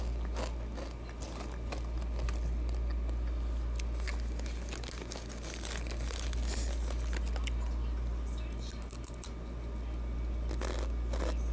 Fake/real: real